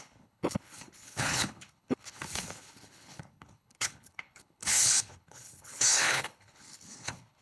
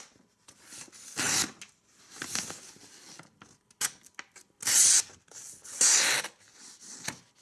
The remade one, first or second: first